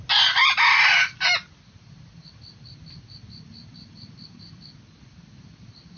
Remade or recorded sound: recorded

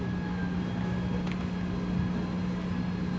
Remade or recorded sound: recorded